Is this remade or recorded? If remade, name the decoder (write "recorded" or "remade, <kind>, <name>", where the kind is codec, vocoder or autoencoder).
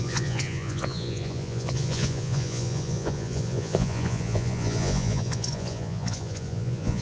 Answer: remade, vocoder, Vocos